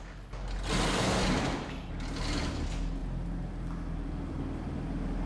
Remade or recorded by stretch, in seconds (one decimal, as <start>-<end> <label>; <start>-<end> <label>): 0.0-5.3 recorded